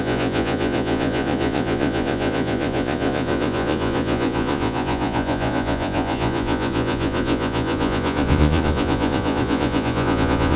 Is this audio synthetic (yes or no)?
yes